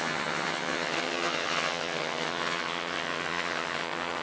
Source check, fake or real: fake